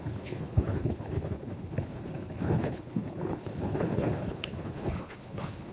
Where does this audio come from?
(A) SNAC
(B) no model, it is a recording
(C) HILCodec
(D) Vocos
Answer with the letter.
C